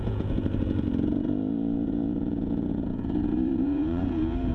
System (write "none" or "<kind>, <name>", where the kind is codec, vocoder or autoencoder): vocoder, Vocos